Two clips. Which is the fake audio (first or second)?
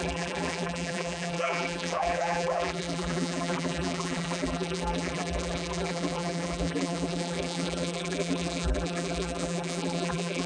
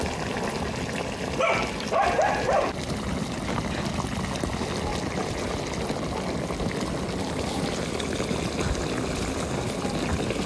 first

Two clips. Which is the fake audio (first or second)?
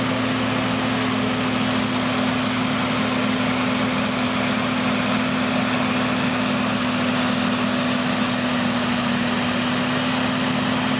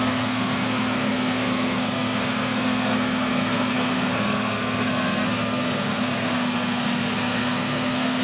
second